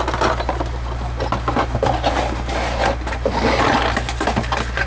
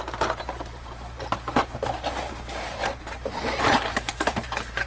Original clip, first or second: first